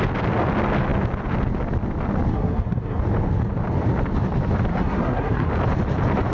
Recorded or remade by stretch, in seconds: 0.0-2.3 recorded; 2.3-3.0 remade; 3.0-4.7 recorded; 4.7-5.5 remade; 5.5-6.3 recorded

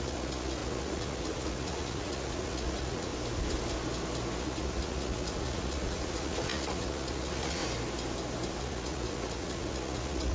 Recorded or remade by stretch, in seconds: 0.0-3.1 remade; 3.1-4.4 recorded; 4.4-7.6 remade; 7.6-8.6 recorded; 8.6-10.3 remade

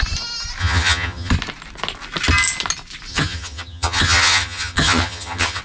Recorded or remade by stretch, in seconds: 0.0-0.6 recorded; 0.6-1.3 remade; 1.3-3.1 recorded; 3.1-5.6 remade

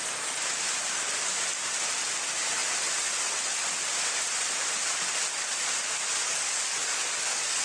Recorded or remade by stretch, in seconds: 0.0-6.2 recorded; 6.2-7.6 remade

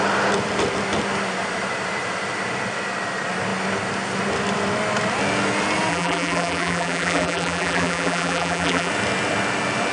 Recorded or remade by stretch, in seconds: 0.0-5.9 recorded; 5.9-8.9 remade; 8.9-9.9 recorded